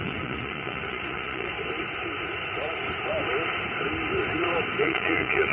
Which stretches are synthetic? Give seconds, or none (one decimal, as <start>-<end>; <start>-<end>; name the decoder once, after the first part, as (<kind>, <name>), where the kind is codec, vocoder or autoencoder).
0.0-1.5 (vocoder, Vocos); 4.8-5.5